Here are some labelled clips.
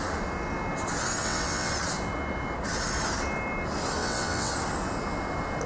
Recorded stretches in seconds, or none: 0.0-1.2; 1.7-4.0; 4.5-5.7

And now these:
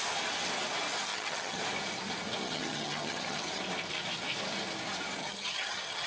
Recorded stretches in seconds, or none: 0.0-1.1; 1.6-2.4; 3.6-5.2